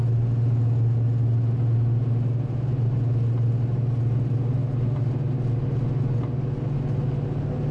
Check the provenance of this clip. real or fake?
real